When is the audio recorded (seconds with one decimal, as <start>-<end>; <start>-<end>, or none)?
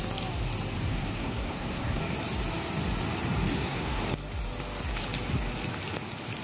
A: 0.0-0.9; 2.0-3.5; 4.0-6.4